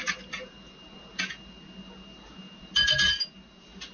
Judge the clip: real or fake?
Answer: real